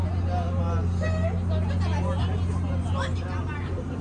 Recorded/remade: recorded